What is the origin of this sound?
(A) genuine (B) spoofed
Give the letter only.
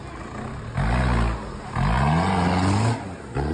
A